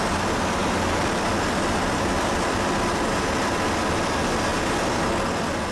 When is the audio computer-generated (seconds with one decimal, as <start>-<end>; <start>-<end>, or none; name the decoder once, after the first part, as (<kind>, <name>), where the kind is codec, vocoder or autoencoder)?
0.6-4.0 (vocoder, BigVGAN v2)